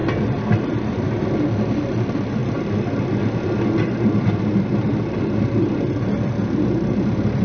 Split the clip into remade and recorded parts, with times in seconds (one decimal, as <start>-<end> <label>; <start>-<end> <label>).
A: 0.0-1.0 remade; 1.0-7.4 recorded